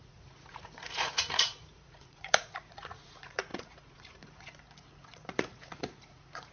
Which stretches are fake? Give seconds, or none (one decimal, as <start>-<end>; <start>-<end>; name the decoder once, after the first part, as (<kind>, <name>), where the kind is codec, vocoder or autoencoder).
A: 0.0-6.5 (vocoder, Vocos)